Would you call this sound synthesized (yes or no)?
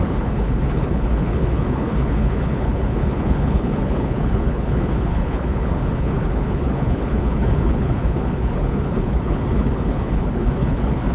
yes